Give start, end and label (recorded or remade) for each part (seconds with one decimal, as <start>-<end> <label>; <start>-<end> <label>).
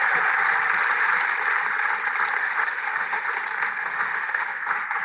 0.0-2.4 recorded; 2.4-3.3 remade; 3.3-3.8 recorded; 3.8-5.0 remade